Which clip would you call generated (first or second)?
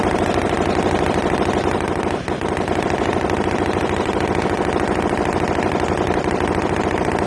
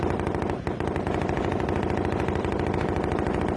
first